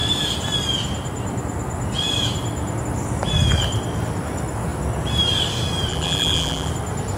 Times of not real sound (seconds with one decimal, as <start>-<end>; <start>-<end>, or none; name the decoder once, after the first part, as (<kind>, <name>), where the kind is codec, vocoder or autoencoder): 5.9-6.7 (vocoder, BigVGAN v2)